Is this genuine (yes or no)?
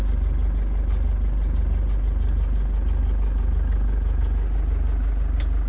yes